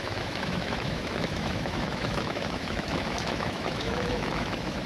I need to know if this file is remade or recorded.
remade